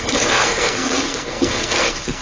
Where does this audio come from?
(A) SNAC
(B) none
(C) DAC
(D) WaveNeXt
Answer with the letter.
A